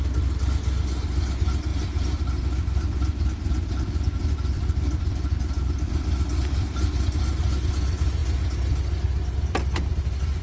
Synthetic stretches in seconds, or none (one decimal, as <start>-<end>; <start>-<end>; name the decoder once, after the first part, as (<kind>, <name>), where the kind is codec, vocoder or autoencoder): 1.7-7.0 (vocoder, BigVGAN v2)